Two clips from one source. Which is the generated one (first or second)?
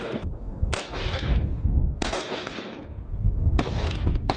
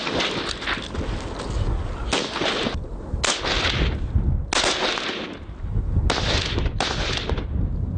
first